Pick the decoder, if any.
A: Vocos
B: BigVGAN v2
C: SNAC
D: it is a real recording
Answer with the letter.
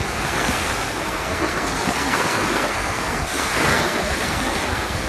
C